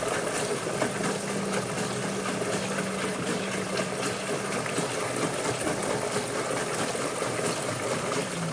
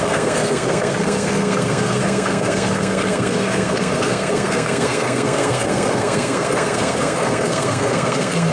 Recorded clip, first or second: first